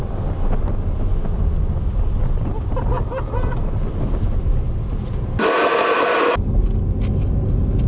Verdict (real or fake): real